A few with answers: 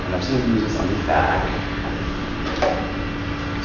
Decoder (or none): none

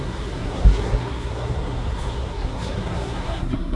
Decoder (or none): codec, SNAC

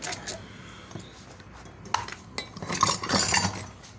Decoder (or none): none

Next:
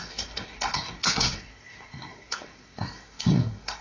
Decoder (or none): codec, SNAC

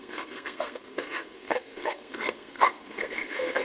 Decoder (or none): codec, SNAC